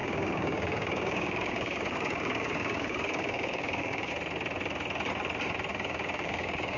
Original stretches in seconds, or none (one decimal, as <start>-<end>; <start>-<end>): 4.1-5.7